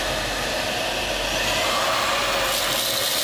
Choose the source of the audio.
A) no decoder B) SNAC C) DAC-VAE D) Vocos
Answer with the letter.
A